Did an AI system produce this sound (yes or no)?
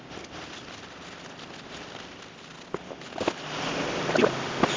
no